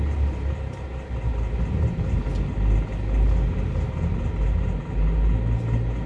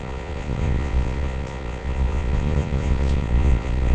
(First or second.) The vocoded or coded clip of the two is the second